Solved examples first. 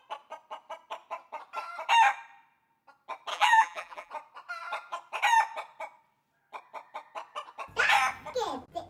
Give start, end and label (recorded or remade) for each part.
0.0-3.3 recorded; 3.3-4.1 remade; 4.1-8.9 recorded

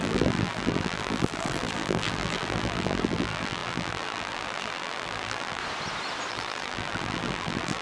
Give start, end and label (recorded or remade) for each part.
0.0-5.6 remade; 5.6-6.3 recorded; 6.3-7.8 remade

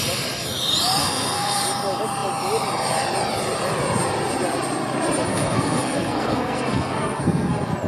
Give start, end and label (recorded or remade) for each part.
0.0-1.0 recorded; 1.0-1.6 remade; 1.6-5.3 recorded; 5.3-7.5 remade; 7.5-7.9 recorded

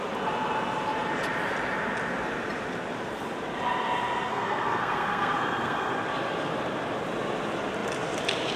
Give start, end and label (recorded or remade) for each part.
0.0-4.3 recorded; 4.3-5.9 remade; 5.9-8.6 recorded

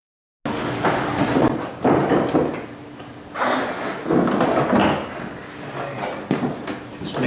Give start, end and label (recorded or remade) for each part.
0.0-7.3 recorded

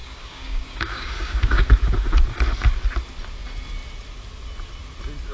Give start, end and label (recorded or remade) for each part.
0.0-1.7 remade; 1.7-5.3 recorded

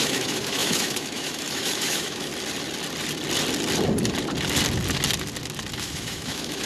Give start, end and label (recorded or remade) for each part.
0.0-2.3 remade; 2.3-5.8 recorded; 5.8-6.7 remade

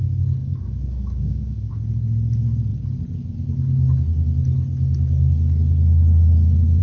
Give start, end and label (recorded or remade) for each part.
0.0-0.4 recorded; 0.4-1.7 remade; 1.7-6.8 recorded